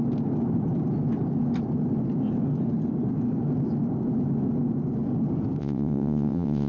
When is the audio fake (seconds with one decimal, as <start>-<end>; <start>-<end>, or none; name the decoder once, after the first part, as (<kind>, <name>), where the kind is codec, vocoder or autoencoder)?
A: 5.6-6.7 (vocoder, WaveNeXt)